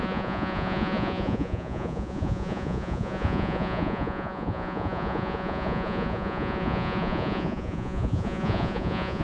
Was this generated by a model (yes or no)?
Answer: yes